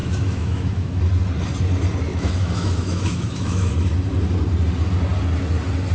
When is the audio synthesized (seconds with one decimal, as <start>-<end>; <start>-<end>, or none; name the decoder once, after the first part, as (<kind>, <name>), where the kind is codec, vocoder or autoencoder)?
0.0-1.0 (autoencoder, DAC-VAE); 2.1-3.7